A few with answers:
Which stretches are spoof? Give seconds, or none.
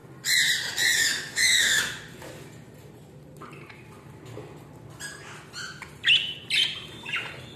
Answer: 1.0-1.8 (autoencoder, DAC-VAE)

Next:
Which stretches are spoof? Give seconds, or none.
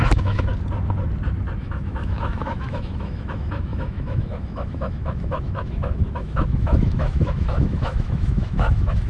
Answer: 0.0-0.5 (autoencoder, DAC-VAE); 1.6-9.1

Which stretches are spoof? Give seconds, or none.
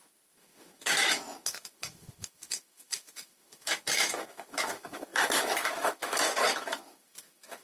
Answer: 0.0-7.6 (autoencoder, DAC-VAE)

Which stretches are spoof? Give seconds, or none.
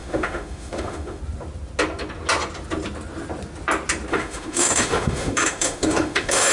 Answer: 0.0-1.2 (autoencoder, DAC-VAE); 4.1-6.5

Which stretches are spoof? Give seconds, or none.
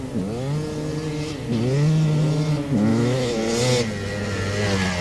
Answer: 2.9-3.4 (autoencoder, DAC-VAE)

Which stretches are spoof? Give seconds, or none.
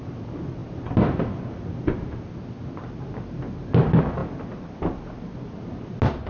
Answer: none